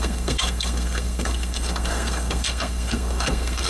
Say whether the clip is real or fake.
fake